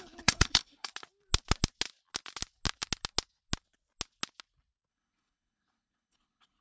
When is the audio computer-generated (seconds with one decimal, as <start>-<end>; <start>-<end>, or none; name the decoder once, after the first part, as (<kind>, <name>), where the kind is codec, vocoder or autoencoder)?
0.0-0.9 (codec, HILCodec); 4.9-6.6